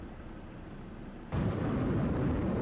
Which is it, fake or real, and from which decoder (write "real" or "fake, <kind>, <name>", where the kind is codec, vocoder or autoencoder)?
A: real